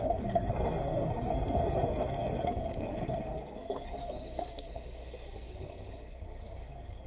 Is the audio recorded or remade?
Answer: remade